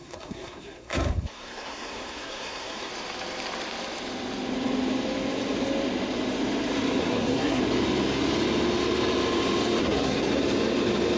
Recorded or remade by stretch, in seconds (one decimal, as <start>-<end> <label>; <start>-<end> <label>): 0.0-2.9 remade; 2.9-7.0 recorded; 7.0-7.6 remade; 7.6-9.8 recorded; 9.8-10.3 remade; 10.3-11.2 recorded